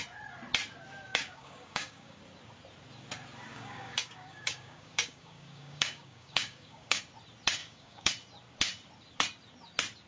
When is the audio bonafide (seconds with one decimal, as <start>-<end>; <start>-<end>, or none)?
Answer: 0.0-1.1; 2.2-3.5; 7.0-7.6; 8.1-10.1